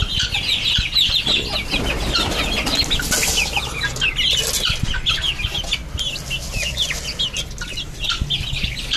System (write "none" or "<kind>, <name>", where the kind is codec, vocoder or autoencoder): none